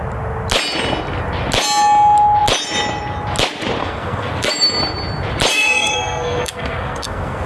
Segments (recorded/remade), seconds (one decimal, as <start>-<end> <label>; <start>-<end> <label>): 0.0-3.8 recorded; 3.8-4.5 remade; 4.5-5.5 recorded; 5.5-7.5 remade